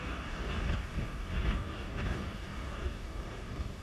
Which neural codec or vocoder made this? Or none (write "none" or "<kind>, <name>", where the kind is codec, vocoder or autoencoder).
codec, DAC